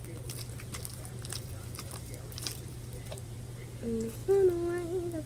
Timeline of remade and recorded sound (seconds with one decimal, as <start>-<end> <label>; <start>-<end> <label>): 0.0-0.9 recorded; 0.9-3.6 remade; 3.6-5.3 recorded